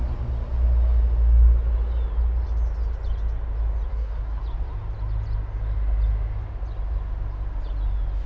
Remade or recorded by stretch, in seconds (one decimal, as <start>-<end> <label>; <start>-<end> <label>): 0.0-3.9 recorded; 3.9-4.4 remade; 4.4-8.3 recorded